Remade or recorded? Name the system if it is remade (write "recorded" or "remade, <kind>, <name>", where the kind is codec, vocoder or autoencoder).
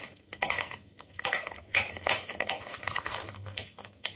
remade, codec, SNAC